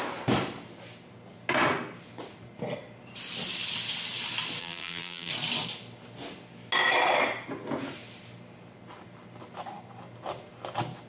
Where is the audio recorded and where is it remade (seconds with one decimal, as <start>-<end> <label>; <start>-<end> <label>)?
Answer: 0.0-4.6 recorded; 4.6-5.3 remade; 5.3-11.1 recorded

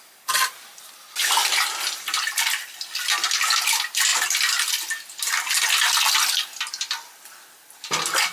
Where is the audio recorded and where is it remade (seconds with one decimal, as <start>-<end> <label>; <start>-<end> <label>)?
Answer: 0.0-1.4 recorded; 1.4-2.4 remade; 2.4-8.3 recorded

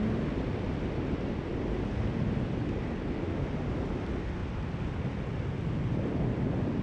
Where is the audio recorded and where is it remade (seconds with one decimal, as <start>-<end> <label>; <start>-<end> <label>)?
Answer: 0.0-6.8 recorded